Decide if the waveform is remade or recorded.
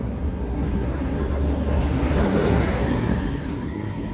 remade